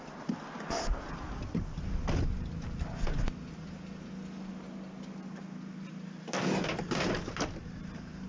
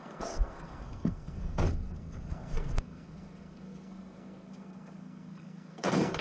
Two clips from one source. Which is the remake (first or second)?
second